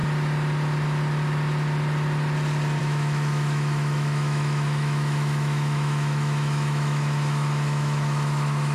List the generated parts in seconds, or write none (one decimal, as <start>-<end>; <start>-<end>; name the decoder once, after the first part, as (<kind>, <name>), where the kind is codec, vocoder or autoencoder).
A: 2.8-8.7 (autoencoder, DAC-VAE)